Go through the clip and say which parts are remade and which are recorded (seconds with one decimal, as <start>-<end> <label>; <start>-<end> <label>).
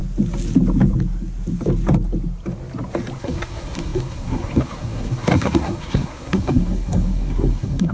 0.0-3.2 recorded; 3.2-7.9 remade